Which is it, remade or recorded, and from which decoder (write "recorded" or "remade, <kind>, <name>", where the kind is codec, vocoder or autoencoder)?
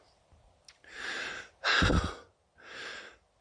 recorded